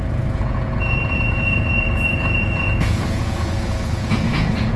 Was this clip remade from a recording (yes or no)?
yes